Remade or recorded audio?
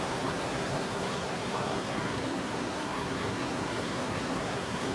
remade